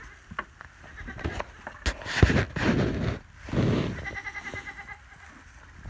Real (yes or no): yes